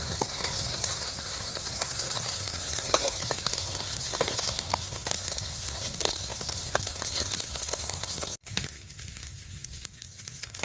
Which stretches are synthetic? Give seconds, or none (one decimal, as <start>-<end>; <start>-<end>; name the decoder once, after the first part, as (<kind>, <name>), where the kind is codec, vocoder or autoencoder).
0.0-10.6 (codec, SNAC)